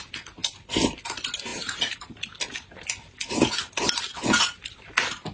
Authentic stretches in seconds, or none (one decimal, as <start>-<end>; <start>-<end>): 0.0-5.3